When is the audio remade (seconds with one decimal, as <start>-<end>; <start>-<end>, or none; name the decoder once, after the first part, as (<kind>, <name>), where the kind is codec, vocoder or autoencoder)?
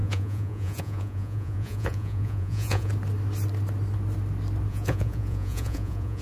0.0-2.9 (vocoder, Vocos); 4.7-6.2